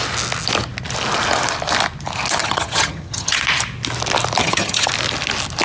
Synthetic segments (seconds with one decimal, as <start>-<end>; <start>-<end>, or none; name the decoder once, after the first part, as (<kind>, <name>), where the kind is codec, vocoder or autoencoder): 2.4-3.4 (vocoder, HiFi-GAN); 4.4-4.9